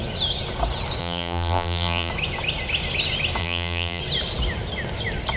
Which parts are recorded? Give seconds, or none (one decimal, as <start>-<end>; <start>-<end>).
0.0-1.0; 2.1-3.4; 4.0-5.4